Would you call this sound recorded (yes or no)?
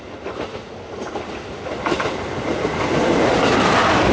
yes